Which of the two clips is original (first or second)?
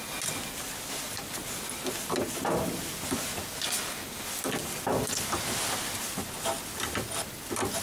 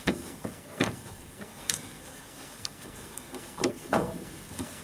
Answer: first